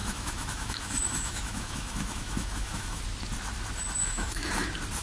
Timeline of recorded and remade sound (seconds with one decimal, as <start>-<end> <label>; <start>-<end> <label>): 0.0-3.0 remade; 3.0-4.0 recorded; 4.0-4.5 remade; 4.5-5.0 recorded